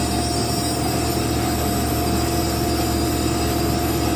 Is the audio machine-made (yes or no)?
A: no